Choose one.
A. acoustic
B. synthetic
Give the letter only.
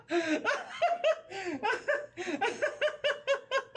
A